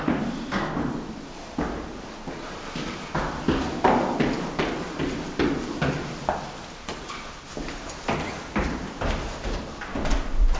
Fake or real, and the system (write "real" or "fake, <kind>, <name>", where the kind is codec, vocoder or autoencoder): real